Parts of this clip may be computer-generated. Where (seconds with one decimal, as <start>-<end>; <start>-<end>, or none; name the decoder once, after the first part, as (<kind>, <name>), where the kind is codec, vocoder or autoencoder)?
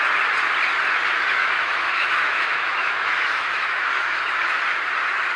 1.4-4.6 (autoencoder, DAC-VAE)